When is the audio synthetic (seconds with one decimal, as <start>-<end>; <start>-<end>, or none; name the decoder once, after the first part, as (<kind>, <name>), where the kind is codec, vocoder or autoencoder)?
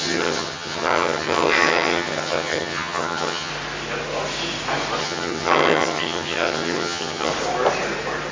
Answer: 0.0-3.5 (vocoder, HiFi-GAN); 5.0-7.3